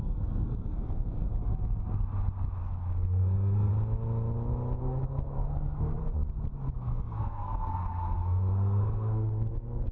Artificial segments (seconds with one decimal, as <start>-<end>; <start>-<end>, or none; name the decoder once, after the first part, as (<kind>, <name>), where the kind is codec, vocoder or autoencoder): 0.0-1.3 (codec, SNAC); 2.6-3.7; 4.8-6.0; 6.7-9.9